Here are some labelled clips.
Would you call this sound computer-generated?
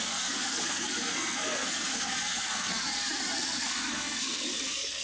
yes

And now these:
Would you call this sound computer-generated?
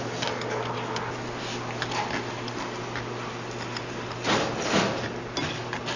no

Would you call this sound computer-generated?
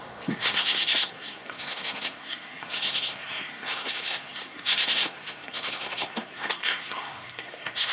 yes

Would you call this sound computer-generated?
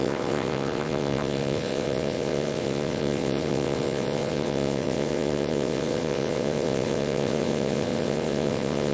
yes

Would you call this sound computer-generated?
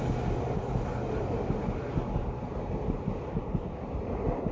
no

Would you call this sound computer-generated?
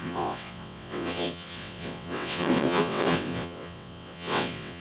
yes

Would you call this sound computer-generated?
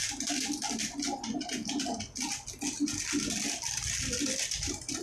no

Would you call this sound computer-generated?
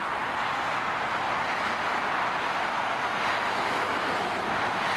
no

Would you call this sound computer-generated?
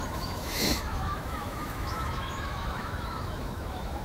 yes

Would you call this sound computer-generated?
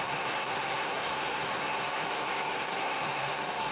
yes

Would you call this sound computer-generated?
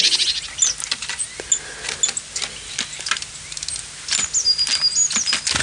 no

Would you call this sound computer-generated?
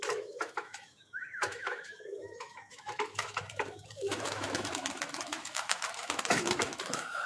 yes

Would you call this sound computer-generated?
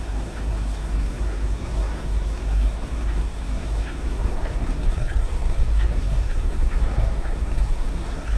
yes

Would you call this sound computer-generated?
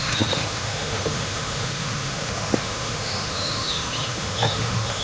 yes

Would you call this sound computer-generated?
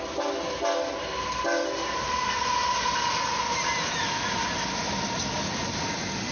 no